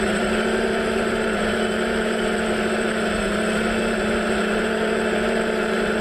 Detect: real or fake fake